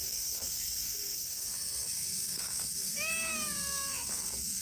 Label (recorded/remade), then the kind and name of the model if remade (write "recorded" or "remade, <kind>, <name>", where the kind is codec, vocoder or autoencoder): remade, codec, SNAC